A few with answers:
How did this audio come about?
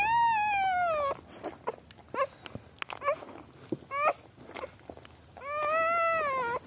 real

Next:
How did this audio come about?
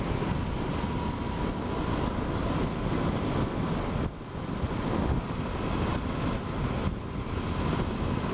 real